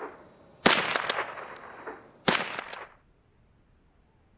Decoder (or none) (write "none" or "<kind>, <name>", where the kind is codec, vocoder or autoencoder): none